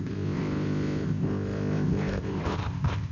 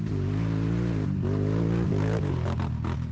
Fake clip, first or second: first